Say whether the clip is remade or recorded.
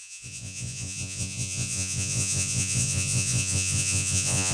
remade